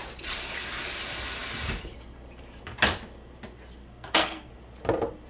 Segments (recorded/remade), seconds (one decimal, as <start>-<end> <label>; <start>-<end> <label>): 0.0-3.8 recorded; 3.8-4.5 remade; 4.5-5.3 recorded